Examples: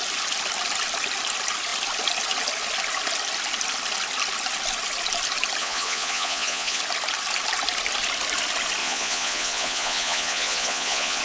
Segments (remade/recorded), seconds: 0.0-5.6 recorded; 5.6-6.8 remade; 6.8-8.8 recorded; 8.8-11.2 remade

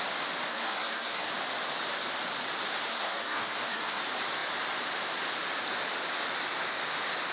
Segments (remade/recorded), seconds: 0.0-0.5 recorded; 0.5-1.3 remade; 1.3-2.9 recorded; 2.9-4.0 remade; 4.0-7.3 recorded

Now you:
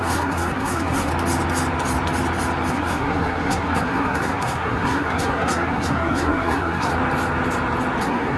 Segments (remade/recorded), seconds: 0.0-1.1 remade; 1.1-2.7 recorded; 2.7-6.9 remade; 6.9-8.0 recorded; 8.0-8.4 remade